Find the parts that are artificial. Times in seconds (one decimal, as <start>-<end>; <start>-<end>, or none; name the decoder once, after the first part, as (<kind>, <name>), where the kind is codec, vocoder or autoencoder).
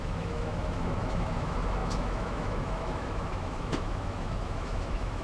0.0-5.2 (autoencoder, DAC-VAE)